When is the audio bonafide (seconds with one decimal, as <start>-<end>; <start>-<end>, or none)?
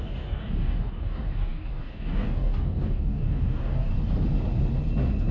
3.9-5.3